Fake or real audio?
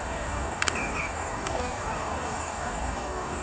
fake